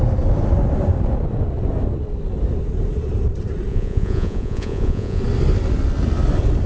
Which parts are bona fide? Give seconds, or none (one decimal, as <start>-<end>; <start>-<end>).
0.0-3.7; 5.2-6.7

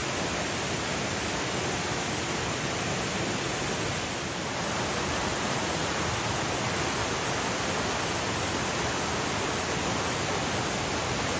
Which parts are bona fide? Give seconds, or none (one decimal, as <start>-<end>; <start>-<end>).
0.0-5.6; 6.1-11.4